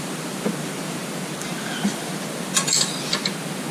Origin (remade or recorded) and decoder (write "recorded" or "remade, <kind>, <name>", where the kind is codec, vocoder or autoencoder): recorded